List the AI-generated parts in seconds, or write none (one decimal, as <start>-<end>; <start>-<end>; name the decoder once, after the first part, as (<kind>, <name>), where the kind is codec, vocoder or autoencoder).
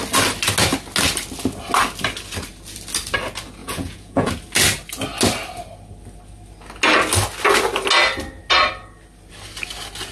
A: 3.6-4.3 (vocoder, Vocos)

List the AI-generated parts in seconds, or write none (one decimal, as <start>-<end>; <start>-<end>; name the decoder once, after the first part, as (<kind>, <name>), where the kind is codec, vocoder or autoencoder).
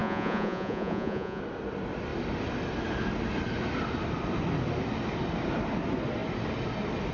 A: 0.0-1.4 (vocoder, Vocos)